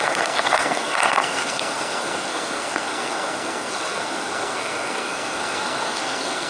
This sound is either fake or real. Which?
fake